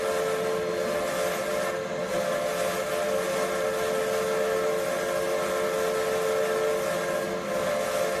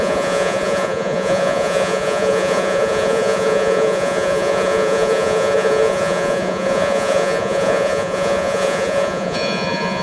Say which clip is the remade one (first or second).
second